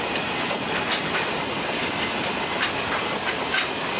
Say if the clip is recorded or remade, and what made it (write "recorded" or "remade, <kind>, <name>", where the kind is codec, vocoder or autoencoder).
recorded